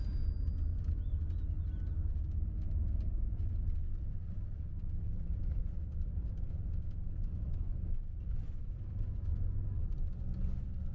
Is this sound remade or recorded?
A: recorded